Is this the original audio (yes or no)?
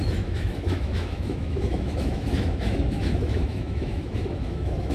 no